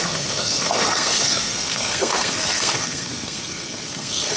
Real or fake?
fake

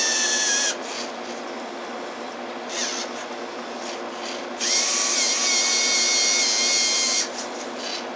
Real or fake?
real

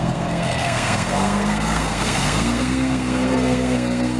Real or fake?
fake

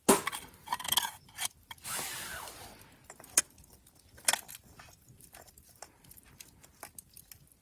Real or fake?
real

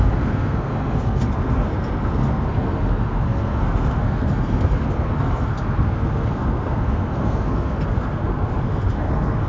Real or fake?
fake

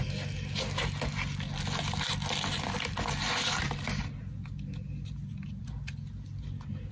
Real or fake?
real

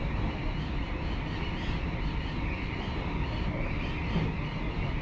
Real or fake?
real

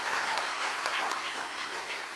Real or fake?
fake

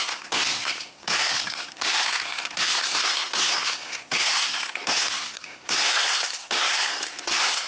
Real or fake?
fake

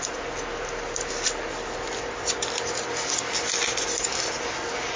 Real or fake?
real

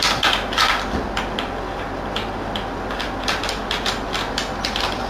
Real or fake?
real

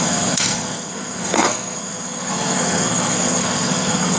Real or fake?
fake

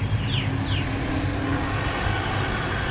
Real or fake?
real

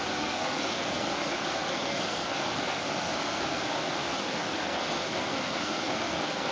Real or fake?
fake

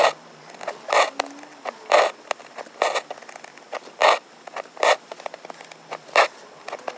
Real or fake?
real